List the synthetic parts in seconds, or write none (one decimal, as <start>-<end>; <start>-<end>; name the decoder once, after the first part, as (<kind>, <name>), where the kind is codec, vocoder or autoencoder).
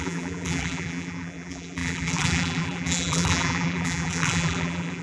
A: 0.0-5.0 (vocoder, BigVGAN v2)